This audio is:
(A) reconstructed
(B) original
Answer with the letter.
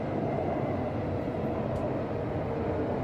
B